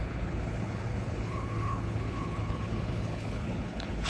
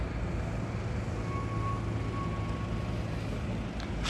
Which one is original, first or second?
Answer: second